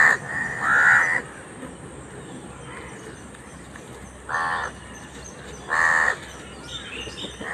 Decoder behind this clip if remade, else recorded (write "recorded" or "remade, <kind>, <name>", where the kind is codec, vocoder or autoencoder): recorded